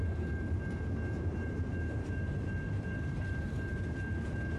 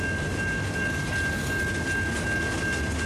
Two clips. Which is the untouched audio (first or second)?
second